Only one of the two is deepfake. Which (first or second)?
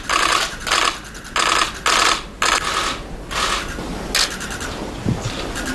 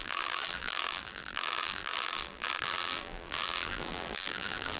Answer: second